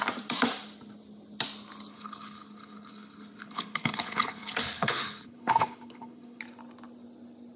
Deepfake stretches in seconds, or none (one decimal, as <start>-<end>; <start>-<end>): 1.9-6.4